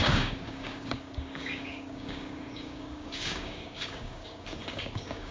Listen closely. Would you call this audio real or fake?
fake